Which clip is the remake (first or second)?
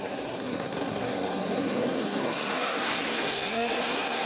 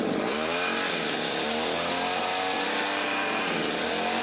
first